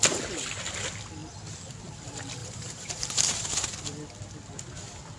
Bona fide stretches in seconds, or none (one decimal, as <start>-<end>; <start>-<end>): 0.0-2.4; 3.7-5.2